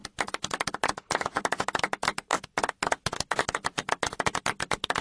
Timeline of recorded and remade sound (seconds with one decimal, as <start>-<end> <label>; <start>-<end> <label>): 0.0-5.0 recorded